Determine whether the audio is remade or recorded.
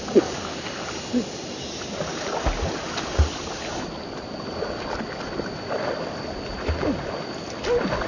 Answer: recorded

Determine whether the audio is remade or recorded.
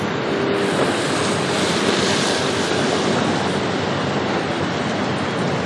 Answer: recorded